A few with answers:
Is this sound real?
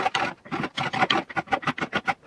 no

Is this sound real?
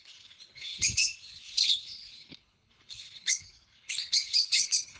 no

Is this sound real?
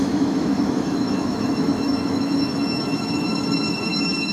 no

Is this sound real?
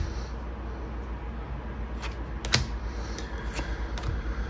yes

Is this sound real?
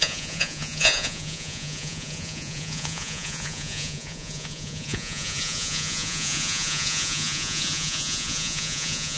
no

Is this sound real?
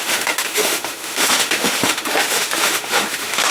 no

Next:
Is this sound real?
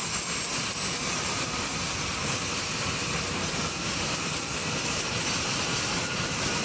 yes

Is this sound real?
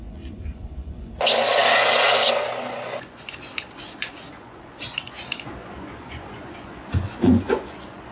no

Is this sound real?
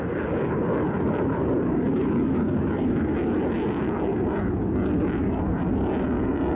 yes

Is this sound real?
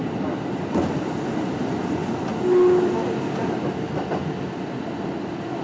yes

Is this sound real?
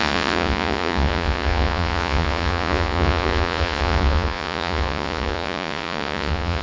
no